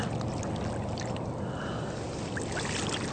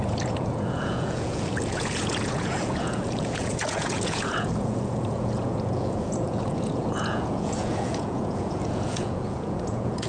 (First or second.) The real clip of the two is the first